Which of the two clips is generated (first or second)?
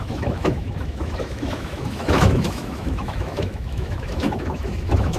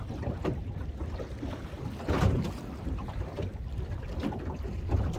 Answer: first